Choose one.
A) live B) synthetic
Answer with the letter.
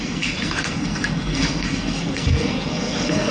B